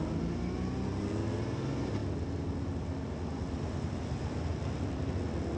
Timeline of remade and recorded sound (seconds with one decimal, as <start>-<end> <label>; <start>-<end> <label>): 0.0-5.6 recorded